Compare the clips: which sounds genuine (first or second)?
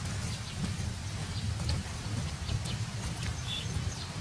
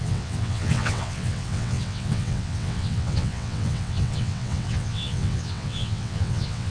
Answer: first